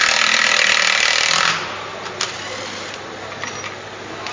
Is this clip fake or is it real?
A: real